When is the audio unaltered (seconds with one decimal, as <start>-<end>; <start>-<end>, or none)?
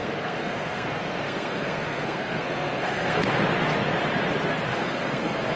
3.4-4.7